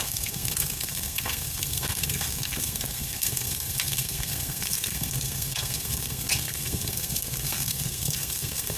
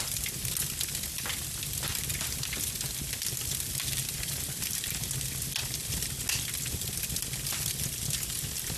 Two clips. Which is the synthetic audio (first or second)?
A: first